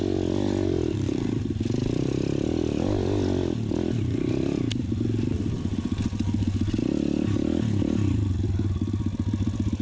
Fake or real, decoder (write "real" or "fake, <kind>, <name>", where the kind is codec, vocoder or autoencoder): real